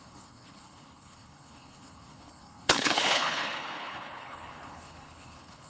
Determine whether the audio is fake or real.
fake